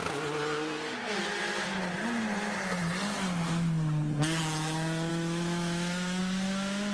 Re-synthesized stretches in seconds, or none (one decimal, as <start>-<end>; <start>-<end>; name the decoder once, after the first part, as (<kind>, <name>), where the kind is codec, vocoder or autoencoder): 5.1-6.2 (autoencoder, DAC-VAE)